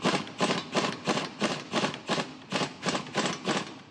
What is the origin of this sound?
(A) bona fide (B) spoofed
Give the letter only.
A